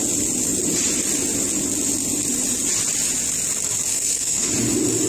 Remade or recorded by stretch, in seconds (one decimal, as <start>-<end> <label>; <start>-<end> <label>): 0.0-3.9 recorded; 3.9-4.5 remade; 4.5-5.1 recorded